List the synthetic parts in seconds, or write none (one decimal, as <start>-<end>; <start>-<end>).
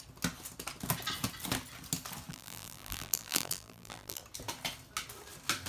2.3-4.2